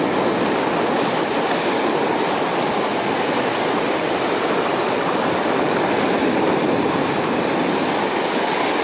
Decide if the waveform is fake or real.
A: real